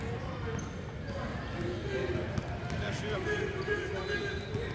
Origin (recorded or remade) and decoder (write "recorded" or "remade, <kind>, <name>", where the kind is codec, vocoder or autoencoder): recorded